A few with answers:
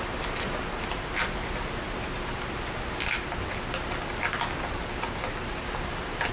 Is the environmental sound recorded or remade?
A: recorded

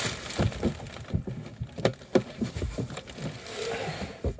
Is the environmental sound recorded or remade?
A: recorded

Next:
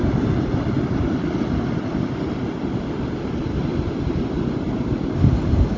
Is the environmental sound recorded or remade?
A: recorded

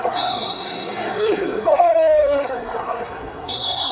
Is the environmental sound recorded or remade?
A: remade